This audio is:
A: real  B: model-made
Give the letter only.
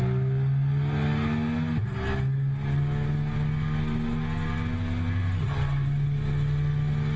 A